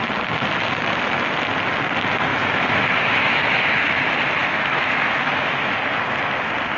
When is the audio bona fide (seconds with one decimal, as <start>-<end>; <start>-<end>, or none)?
0.0-2.3; 3.9-4.4; 5.7-6.8